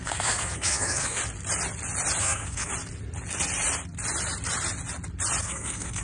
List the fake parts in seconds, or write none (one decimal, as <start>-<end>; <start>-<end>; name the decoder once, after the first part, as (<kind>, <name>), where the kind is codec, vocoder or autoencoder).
0.0-1.2 (codec, SNAC); 2.2-2.7; 5.4-6.0